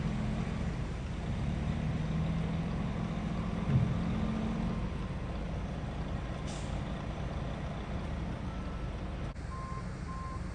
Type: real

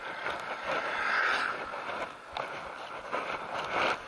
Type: real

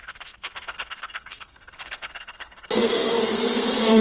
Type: fake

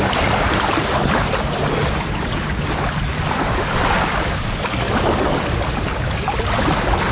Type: real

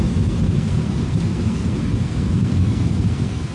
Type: fake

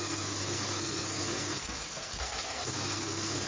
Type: fake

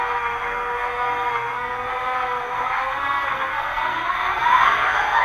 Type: fake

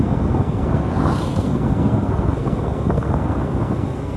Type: fake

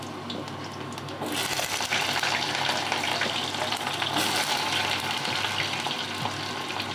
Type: real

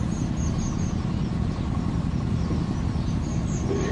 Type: real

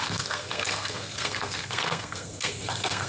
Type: fake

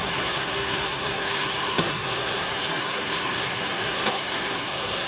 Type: fake